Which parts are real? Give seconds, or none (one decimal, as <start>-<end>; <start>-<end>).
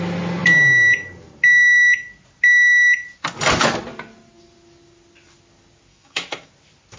0.0-5.9; 6.5-7.0